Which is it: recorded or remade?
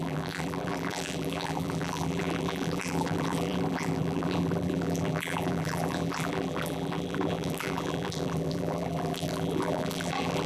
remade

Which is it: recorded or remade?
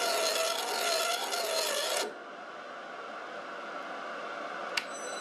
recorded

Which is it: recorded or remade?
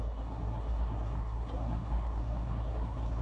remade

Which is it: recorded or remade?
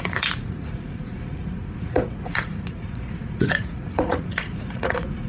remade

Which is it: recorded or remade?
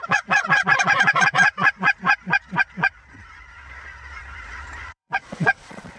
remade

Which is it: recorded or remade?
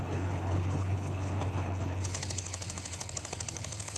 remade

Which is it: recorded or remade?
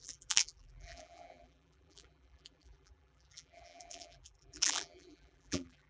remade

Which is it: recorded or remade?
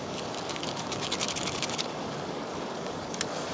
remade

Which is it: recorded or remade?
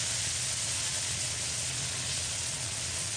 remade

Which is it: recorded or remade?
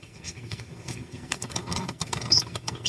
remade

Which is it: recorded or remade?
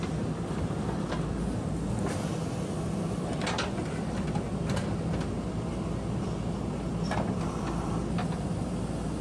recorded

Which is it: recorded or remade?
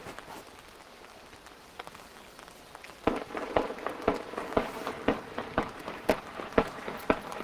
recorded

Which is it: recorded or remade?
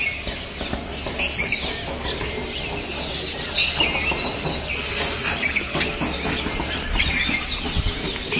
recorded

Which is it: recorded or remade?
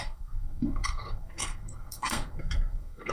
remade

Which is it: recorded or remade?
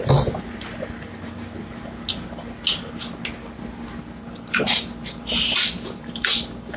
recorded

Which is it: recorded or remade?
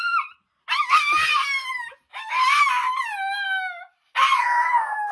recorded